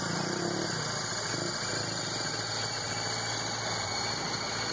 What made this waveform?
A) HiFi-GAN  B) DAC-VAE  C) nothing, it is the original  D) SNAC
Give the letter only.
C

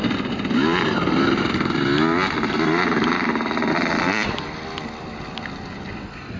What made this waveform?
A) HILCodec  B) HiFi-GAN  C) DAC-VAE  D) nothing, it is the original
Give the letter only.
D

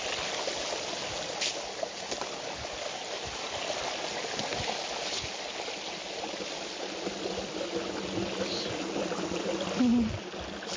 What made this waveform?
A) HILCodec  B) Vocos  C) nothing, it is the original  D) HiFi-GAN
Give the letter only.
C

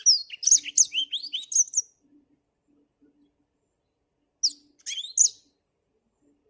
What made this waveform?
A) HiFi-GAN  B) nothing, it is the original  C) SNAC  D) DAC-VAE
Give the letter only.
B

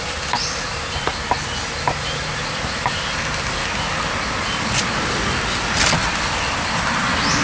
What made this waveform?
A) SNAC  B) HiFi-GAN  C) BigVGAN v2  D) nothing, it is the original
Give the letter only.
D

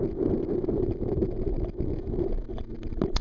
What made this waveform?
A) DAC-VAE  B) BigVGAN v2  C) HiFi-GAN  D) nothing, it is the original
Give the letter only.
D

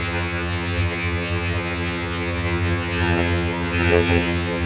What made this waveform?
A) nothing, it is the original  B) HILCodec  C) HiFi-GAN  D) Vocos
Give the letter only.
C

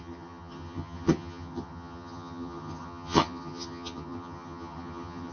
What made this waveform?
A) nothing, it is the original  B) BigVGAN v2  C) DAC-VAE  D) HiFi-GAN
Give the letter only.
D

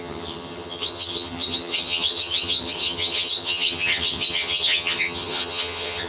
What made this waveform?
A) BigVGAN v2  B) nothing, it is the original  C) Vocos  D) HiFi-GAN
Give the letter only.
D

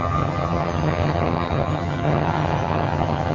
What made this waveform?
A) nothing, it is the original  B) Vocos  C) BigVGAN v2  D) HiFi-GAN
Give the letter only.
D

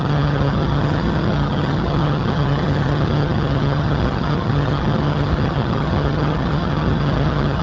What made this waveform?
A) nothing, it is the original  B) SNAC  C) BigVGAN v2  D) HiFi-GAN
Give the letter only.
D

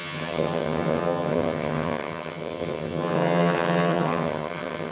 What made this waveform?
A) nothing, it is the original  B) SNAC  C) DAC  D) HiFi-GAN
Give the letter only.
D